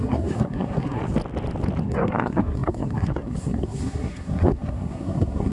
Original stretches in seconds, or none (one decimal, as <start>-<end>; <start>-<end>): 1.0-1.8